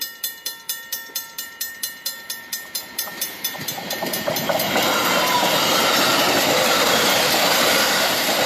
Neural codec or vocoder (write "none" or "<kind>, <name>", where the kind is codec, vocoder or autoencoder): vocoder, BigVGAN v2